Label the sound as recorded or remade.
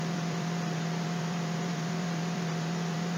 remade